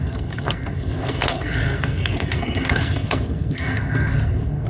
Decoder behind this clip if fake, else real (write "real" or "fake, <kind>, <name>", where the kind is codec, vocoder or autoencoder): fake, codec, SNAC